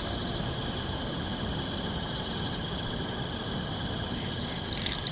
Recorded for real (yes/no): yes